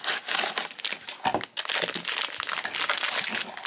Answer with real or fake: real